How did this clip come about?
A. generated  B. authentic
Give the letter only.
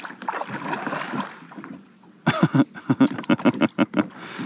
B